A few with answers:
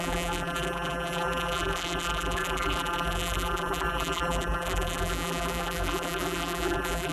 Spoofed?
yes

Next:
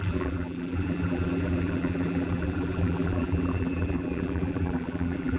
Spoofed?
yes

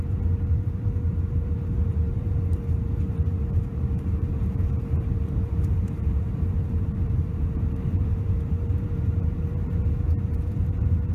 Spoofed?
yes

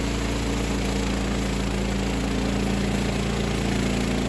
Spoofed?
no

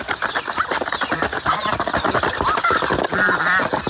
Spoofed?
no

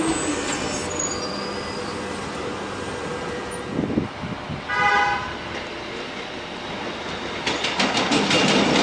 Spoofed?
no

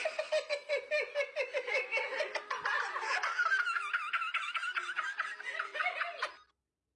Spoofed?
no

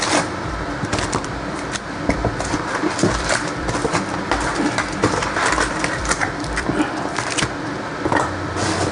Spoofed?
yes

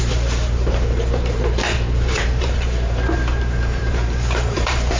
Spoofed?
yes